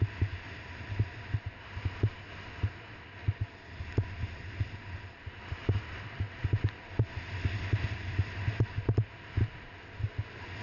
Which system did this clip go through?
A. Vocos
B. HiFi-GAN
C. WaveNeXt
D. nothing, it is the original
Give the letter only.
D